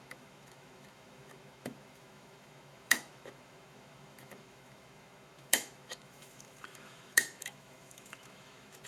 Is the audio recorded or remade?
remade